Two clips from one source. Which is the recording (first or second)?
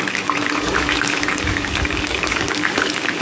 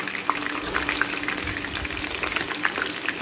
second